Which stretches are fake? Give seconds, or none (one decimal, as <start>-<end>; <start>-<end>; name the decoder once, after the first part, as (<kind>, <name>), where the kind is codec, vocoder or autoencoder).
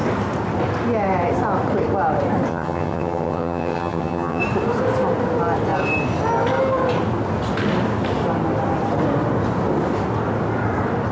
2.5-4.4 (vocoder, HiFi-GAN)